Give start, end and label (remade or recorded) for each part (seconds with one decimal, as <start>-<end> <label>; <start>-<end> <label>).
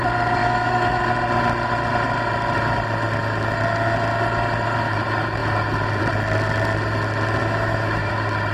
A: 0.0-0.4 recorded; 0.4-1.0 remade; 1.0-7.4 recorded; 7.4-8.1 remade; 8.1-8.5 recorded